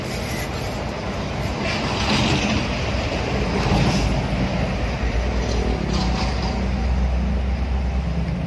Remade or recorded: recorded